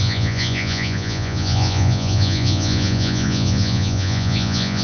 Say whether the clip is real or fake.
fake